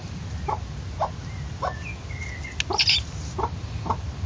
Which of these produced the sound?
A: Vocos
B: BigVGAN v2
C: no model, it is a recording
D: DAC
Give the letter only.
C